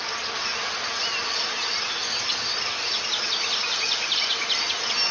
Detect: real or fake real